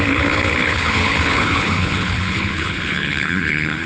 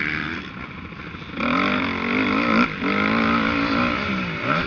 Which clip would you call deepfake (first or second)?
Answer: first